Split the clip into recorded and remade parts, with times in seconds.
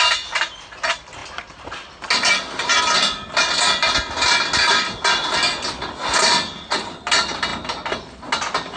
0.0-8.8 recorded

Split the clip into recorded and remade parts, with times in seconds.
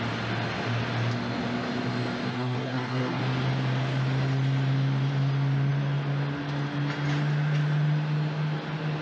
0.0-2.3 recorded; 2.3-3.2 remade; 3.2-9.0 recorded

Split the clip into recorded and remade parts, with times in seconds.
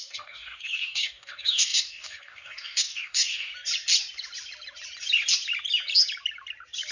0.0-3.5 remade; 3.5-6.9 recorded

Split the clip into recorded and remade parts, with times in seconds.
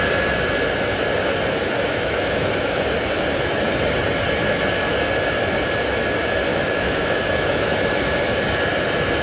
0.0-1.6 recorded; 1.6-2.9 remade; 2.9-6.5 recorded; 6.5-8.0 remade; 8.0-9.2 recorded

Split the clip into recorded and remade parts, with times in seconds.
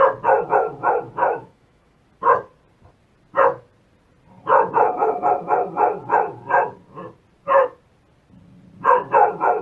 0.0-1.2 recorded; 1.2-2.0 remade; 2.0-9.6 recorded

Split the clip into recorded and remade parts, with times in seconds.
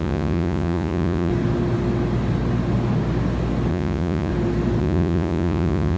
0.0-1.3 remade; 1.3-3.7 recorded; 3.7-4.3 remade; 4.3-4.8 recorded; 4.8-6.0 remade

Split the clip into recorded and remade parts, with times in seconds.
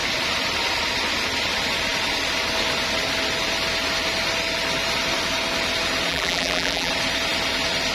0.0-6.1 recorded; 6.1-6.9 remade; 6.9-7.9 recorded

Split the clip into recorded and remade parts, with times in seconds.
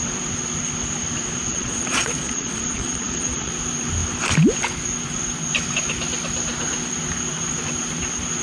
0.0-1.5 recorded; 1.5-3.5 remade; 3.5-8.4 recorded